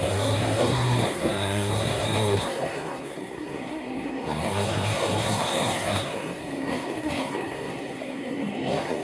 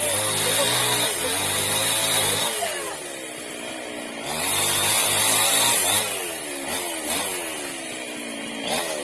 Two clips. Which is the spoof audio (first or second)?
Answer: first